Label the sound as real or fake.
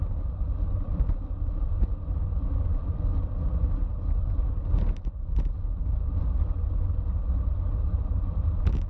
real